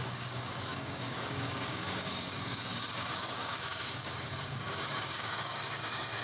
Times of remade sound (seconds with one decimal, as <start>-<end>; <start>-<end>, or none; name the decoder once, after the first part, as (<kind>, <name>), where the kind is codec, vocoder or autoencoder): 0.0-6.2 (codec, DAC)